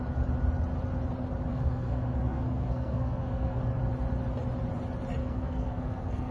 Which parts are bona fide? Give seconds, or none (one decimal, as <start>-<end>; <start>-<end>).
0.0-1.5; 3.6-5.2